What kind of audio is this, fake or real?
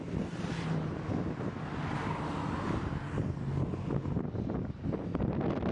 real